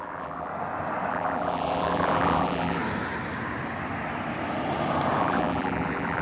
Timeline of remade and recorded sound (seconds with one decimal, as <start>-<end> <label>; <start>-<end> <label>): 0.0-0.5 remade; 0.5-1.1 recorded; 1.1-2.8 remade; 2.8-5.2 recorded; 5.2-6.2 remade